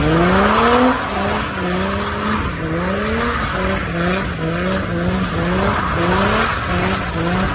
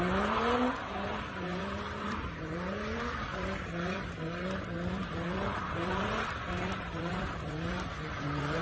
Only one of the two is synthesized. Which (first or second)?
second